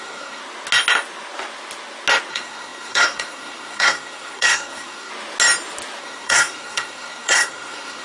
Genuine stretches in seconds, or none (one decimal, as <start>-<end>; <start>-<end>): 0.4-2.3; 5.1-6.0